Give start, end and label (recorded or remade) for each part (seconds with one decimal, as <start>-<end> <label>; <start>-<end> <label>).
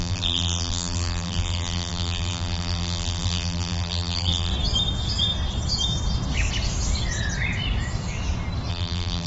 0.0-4.5 remade; 4.5-8.7 recorded; 8.7-9.3 remade